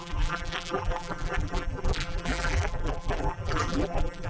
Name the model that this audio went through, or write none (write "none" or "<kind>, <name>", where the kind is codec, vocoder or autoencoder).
vocoder, BigVGAN v2